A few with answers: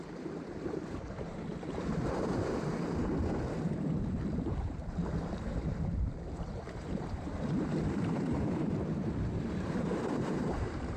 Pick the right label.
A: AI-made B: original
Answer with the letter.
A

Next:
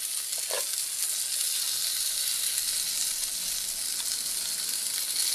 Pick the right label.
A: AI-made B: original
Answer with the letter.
B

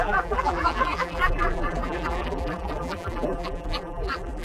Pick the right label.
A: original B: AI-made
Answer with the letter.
B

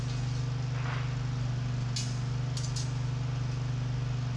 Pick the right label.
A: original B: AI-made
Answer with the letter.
A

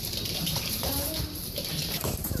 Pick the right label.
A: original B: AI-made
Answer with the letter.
B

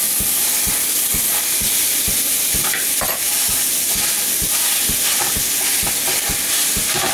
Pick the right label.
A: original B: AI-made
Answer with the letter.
A